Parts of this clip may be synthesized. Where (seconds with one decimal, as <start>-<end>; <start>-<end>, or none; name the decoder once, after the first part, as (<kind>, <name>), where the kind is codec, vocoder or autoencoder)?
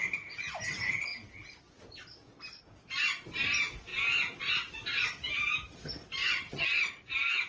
6.2-6.8 (vocoder, HiFi-GAN)